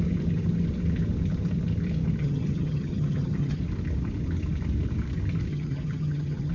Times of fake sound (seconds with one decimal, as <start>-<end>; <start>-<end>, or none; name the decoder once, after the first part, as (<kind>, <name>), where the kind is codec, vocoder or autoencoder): 2.2-3.6 (vocoder, HiFi-GAN); 5.5-6.5